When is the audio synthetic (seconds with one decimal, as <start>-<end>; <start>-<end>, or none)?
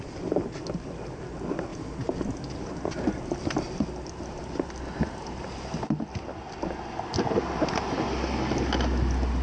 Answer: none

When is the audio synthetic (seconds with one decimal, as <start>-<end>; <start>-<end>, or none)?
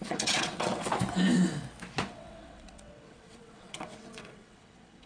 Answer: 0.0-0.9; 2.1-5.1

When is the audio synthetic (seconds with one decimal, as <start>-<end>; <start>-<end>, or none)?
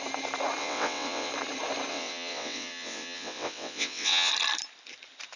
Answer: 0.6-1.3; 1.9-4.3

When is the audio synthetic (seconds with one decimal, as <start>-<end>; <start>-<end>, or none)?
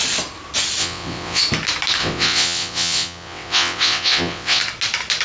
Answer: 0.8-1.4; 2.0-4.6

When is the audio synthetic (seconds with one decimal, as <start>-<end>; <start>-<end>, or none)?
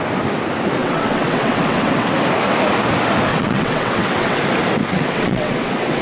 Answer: 0.8-2.1; 3.3-4.4; 4.9-6.0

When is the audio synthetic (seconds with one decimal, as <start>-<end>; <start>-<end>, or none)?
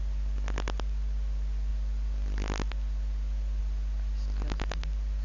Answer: none